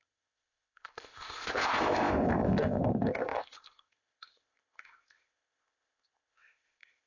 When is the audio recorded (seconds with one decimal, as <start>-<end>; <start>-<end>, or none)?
none